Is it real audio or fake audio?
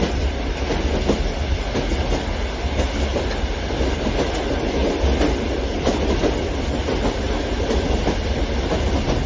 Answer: real